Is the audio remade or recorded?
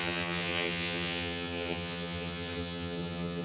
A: remade